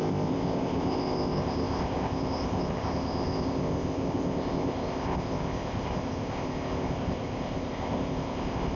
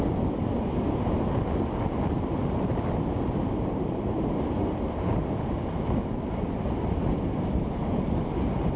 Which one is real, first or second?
second